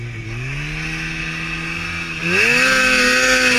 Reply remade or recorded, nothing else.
recorded